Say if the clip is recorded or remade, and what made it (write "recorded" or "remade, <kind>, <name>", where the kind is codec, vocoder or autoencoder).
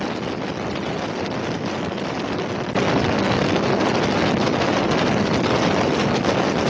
recorded